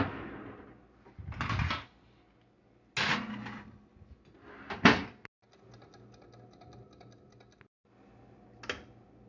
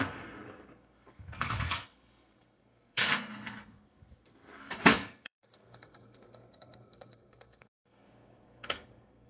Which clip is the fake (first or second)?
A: second